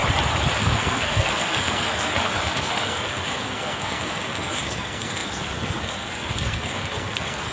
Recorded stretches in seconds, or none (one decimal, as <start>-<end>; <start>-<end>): 0.0-0.6